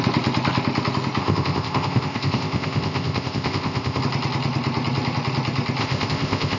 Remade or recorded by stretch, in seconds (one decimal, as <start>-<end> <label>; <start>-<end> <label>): 0.0-1.2 recorded; 1.2-4.0 remade; 4.0-5.8 recorded; 5.8-6.6 remade

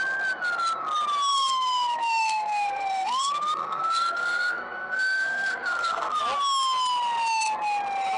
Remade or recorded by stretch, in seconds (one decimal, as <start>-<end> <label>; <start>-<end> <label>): 0.0-1.3 recorded; 1.3-6.2 remade; 6.2-8.2 recorded

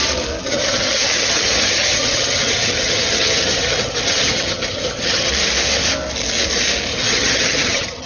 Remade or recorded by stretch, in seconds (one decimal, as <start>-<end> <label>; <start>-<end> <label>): 0.0-0.4 recorded; 0.4-5.3 remade; 5.3-6.9 recorded; 6.9-8.1 remade

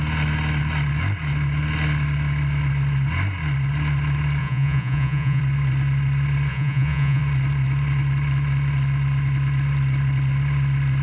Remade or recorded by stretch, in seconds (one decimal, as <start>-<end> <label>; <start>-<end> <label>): 0.0-4.4 recorded; 4.4-5.4 remade; 5.4-6.5 recorded; 6.5-7.2 remade; 7.2-11.0 recorded

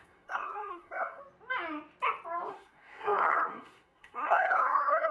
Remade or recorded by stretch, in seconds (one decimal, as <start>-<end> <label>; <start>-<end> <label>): 0.0-1.2 remade; 1.2-2.5 recorded; 2.5-5.1 remade